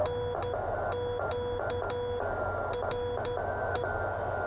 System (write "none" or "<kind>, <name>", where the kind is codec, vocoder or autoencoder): none